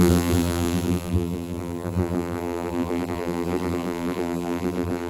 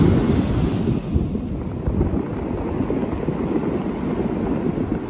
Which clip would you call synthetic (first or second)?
first